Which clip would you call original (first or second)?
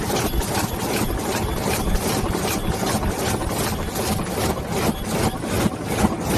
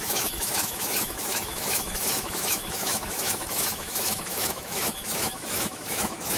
first